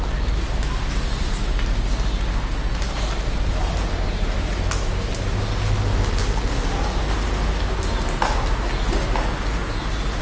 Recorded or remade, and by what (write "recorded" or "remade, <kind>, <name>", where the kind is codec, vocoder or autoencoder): recorded